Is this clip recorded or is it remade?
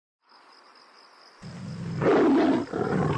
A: recorded